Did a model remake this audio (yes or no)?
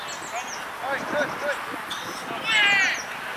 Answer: no